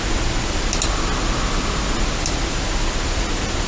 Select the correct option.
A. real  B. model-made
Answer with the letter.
A